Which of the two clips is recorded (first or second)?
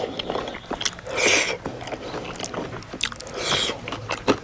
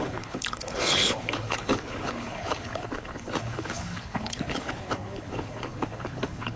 first